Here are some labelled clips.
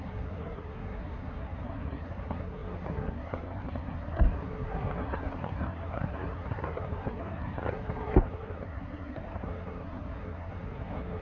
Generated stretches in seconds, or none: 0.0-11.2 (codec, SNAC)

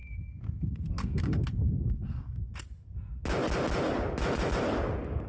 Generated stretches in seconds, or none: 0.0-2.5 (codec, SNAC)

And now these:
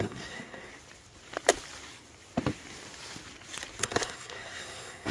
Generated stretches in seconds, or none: 0.0-0.7 (codec, SNAC); 3.8-5.1